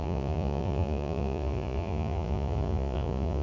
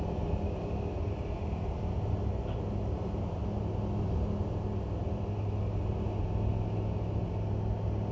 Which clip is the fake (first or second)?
first